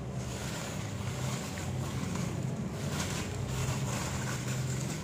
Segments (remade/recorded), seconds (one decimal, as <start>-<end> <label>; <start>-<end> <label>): 0.0-3.6 remade; 3.6-4.4 recorded; 4.4-5.0 remade